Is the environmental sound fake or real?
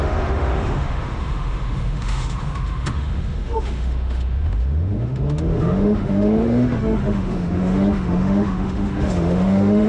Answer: fake